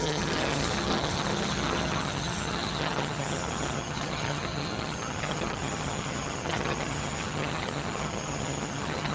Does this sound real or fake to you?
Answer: fake